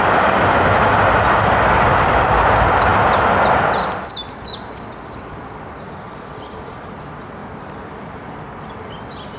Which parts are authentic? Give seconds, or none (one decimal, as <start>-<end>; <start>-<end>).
0.0-9.4